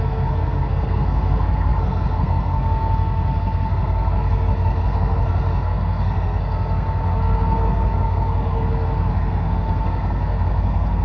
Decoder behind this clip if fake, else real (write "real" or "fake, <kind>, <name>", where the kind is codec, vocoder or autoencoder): fake, codec, SNAC